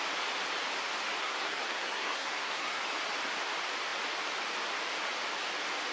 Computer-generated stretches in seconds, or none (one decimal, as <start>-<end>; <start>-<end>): 1.2-2.8